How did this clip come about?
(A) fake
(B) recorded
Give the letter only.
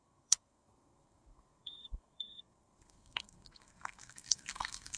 A